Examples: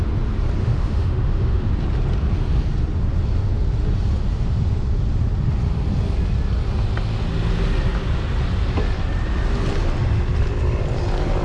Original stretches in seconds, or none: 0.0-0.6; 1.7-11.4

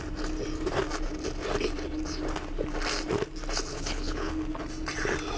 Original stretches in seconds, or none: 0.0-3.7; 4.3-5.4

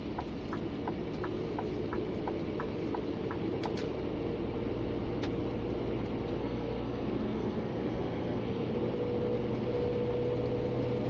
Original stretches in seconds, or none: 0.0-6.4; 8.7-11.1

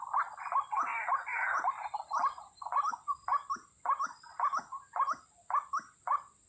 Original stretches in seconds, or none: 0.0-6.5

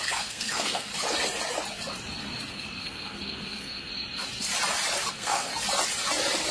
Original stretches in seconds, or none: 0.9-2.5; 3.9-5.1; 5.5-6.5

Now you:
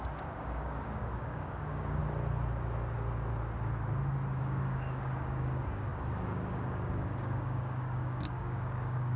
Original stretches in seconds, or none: 2.0-4.4

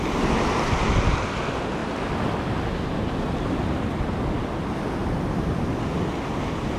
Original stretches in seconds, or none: 0.0-5.0; 5.5-6.8